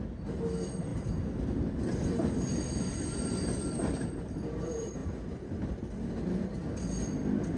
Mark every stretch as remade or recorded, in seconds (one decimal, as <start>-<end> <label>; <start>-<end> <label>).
0.0-0.9 recorded; 0.9-3.2 remade; 3.2-5.0 recorded; 5.0-5.7 remade; 5.7-7.6 recorded

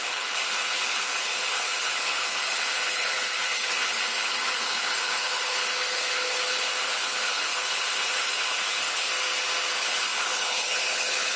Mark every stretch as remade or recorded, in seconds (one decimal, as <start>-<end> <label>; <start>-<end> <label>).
0.0-9.1 remade; 9.1-9.7 recorded; 9.7-11.4 remade

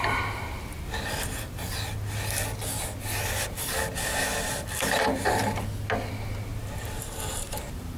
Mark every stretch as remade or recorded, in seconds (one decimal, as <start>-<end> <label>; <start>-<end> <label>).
0.0-6.5 recorded; 6.5-8.0 remade

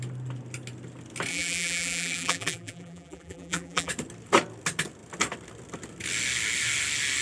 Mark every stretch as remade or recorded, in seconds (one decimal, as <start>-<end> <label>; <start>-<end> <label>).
0.0-1.3 recorded; 1.3-3.9 remade; 3.9-7.2 recorded

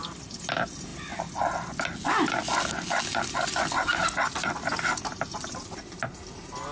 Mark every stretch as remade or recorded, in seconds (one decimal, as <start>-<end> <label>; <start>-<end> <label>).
0.0-6.7 recorded

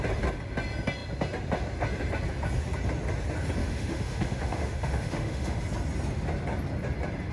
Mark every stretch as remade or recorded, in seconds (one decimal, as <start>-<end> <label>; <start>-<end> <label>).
0.0-3.6 recorded; 3.6-5.6 remade; 5.6-7.3 recorded

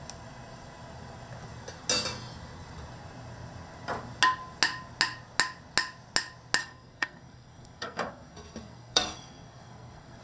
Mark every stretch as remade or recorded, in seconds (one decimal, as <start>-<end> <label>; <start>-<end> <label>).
0.0-6.6 recorded; 6.6-10.2 remade

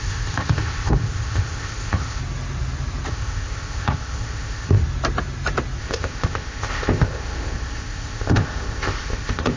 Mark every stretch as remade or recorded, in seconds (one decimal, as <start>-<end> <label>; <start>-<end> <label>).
0.0-2.2 remade; 2.2-3.1 recorded; 3.1-4.8 remade; 4.8-5.8 recorded; 5.8-9.6 remade